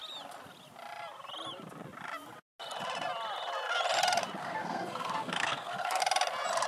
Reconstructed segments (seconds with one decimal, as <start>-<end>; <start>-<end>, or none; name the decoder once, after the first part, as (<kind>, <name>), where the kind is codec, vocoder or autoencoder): 4.4-6.0 (codec, SNAC)